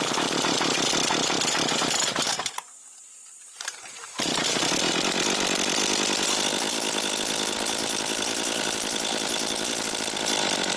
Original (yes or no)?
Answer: yes